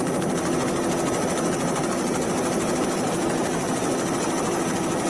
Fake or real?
real